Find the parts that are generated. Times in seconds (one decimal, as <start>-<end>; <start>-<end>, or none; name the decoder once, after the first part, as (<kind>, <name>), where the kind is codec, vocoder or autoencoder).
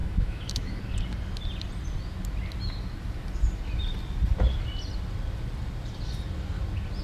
0.0-0.8 (autoencoder, DAC-VAE)